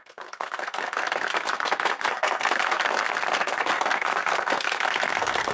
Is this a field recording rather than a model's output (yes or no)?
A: no